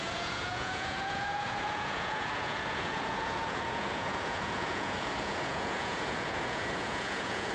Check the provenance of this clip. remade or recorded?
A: remade